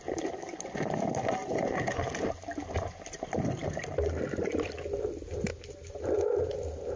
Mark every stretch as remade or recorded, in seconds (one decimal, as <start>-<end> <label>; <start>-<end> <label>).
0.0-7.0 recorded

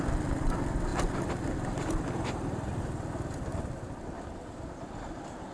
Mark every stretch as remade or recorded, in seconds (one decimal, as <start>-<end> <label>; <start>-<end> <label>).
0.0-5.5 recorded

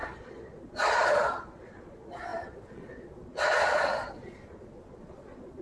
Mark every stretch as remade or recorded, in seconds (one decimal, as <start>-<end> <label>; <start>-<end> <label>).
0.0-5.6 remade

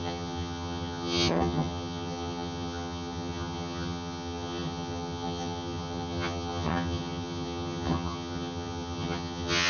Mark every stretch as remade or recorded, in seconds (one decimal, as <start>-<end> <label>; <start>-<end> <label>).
0.0-9.7 remade